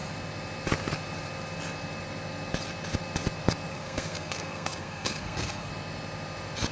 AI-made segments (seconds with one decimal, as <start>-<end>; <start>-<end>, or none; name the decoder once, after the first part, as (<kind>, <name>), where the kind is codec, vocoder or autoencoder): 3.7-5.7 (codec, SNAC)